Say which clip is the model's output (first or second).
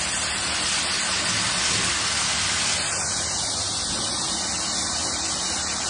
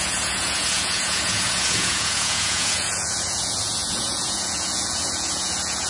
second